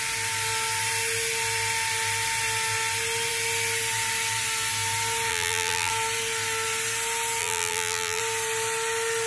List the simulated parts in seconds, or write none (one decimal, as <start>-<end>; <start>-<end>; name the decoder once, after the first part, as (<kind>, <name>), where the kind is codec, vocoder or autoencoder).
5.3-5.9 (vocoder, BigVGAN v2); 7.4-8.2